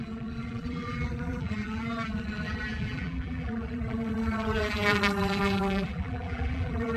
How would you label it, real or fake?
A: fake